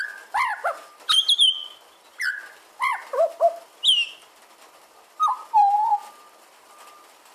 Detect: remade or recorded remade